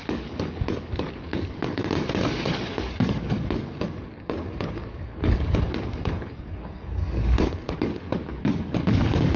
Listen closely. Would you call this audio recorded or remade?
remade